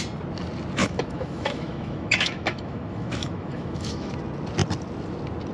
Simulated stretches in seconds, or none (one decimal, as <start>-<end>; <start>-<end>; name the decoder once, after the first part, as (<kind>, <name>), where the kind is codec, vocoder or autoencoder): 0.8-4.1 (autoencoder, DAC-VAE)